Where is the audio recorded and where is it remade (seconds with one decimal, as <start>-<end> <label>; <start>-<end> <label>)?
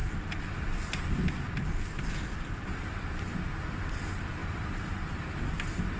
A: 0.0-1.3 remade; 1.3-4.4 recorded; 4.4-4.9 remade; 4.9-6.0 recorded